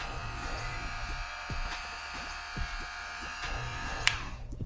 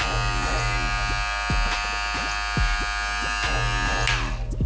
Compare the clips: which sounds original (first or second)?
second